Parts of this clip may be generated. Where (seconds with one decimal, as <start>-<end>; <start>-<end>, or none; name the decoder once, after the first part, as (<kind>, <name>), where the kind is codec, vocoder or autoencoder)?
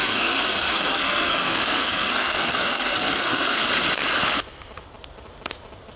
0.0-3.6 (codec, SNAC)